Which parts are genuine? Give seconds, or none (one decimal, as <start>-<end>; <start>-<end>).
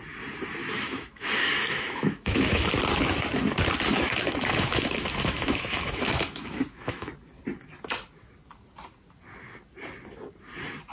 0.0-0.6; 2.7-3.9; 7.1-10.9